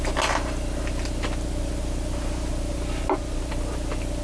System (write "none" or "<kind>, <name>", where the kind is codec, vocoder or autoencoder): none